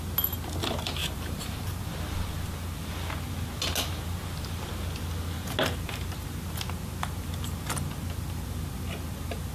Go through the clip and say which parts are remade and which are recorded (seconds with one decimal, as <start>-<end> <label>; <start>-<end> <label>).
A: 0.0-1.0 recorded; 1.0-1.8 remade; 1.8-9.5 recorded